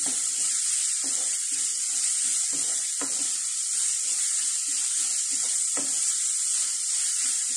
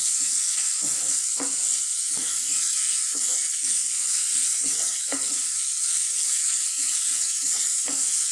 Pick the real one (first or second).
first